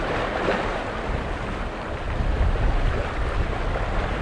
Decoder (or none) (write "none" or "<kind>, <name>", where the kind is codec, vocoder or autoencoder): none